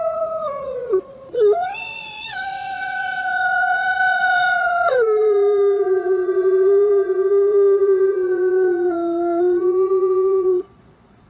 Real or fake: fake